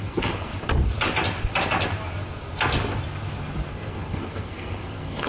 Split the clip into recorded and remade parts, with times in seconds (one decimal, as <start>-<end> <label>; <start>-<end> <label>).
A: 0.0-0.5 remade; 0.5-3.7 recorded; 3.7-5.3 remade